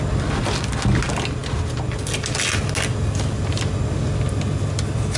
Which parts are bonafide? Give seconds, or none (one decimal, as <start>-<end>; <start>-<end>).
0.0-5.2